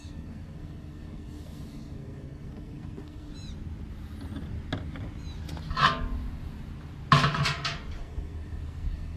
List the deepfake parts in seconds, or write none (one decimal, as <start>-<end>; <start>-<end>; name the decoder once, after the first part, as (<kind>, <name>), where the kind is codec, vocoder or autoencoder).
0.0-3.3 (codec, SNAC); 8.0-9.2